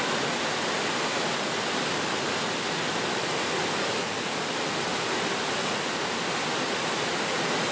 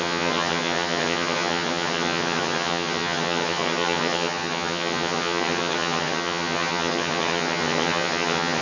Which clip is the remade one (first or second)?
second